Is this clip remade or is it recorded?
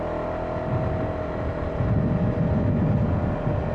recorded